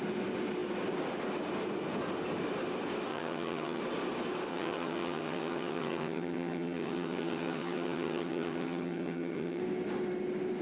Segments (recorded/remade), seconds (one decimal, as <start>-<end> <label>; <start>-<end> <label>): 0.0-3.1 recorded; 3.1-3.8 remade; 3.8-4.5 recorded; 4.5-9.6 remade; 9.6-10.6 recorded